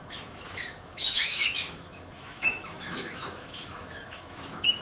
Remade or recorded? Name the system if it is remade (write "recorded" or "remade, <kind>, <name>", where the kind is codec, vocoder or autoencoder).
remade, autoencoder, DAC-VAE